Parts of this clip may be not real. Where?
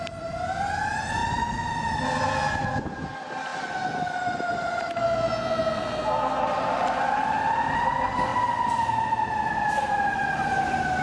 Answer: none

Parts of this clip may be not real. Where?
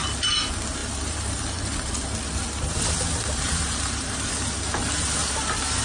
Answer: 0.8-4.3 (vocoder, BigVGAN v2); 5.2-5.8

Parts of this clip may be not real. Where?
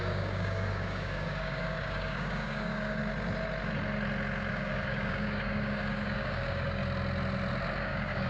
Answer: 0.0-3.0 (codec, DAC); 4.5-6.8; 7.8-8.3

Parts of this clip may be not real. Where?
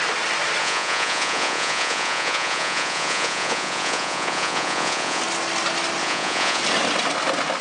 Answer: 0.6-5.2 (vocoder, Vocos); 6.0-6.6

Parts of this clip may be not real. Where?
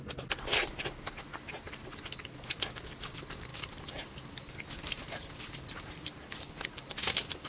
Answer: none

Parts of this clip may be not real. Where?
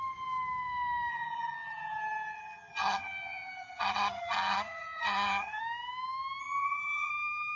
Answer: 1.1-5.6 (vocoder, HiFi-GAN); 6.4-7.1